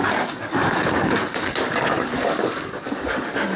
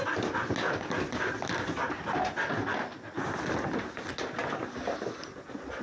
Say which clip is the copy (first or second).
first